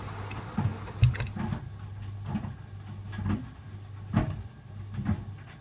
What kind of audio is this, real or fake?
real